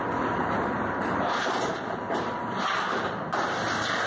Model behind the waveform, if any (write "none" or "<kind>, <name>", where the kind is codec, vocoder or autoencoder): vocoder, BigVGAN v2